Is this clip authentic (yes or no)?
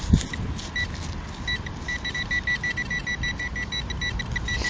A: yes